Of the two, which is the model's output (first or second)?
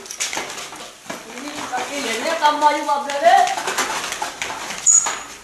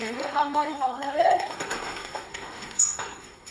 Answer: second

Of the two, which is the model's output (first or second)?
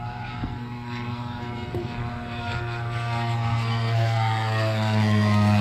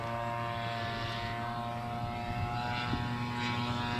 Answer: first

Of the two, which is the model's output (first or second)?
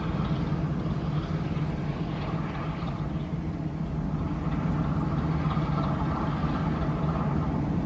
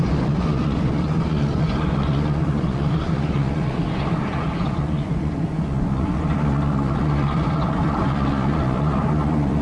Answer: second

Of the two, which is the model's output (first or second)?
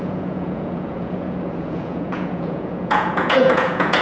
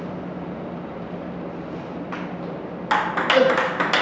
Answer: first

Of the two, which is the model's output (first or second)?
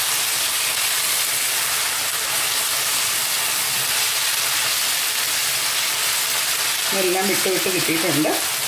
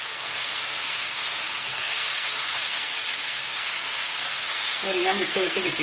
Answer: second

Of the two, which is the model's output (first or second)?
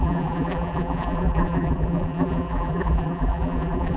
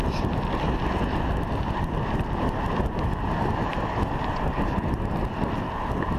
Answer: first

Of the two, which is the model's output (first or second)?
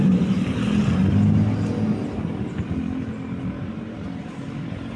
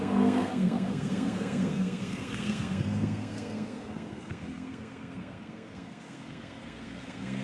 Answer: second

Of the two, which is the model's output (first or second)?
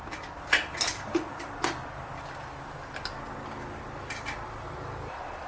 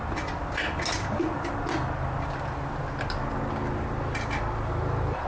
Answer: first